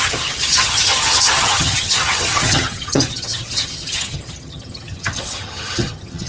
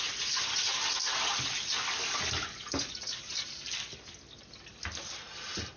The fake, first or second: first